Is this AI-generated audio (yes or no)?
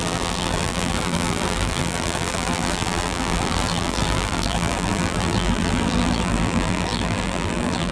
yes